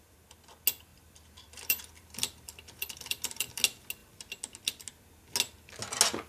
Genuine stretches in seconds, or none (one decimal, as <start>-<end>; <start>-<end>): 0.0-0.9; 3.5-6.3